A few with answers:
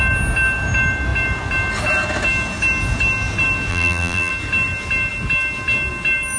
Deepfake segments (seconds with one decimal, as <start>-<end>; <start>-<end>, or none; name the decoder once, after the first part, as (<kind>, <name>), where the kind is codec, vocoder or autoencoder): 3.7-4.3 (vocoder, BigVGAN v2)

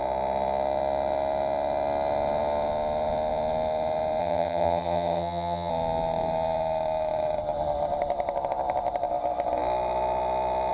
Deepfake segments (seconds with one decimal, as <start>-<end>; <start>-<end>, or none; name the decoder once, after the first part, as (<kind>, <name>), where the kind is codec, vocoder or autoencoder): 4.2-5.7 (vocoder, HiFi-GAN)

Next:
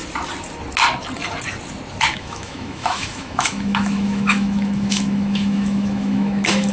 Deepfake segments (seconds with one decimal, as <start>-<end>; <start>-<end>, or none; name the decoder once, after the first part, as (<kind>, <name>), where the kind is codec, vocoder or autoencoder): 2.1-6.7 (autoencoder, DAC-VAE)

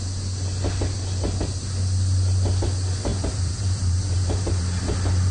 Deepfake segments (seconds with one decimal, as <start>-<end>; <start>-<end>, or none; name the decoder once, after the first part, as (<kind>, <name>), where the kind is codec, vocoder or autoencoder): 3.1-4.8 (vocoder, BigVGAN v2)

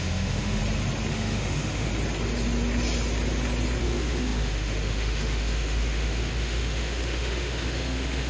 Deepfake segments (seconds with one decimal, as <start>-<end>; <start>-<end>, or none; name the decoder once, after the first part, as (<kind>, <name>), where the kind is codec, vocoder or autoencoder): 0.0-0.6 (autoencoder, DAC-VAE); 1.1-1.9; 3.8-8.3

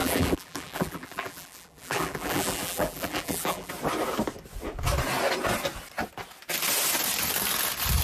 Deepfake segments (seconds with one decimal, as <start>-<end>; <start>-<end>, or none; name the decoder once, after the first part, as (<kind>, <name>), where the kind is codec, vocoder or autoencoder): 0.0-3.7 (vocoder, BigVGAN v2)